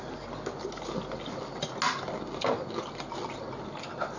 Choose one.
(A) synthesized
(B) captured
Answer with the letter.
B